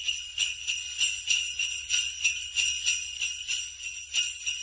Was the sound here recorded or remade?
recorded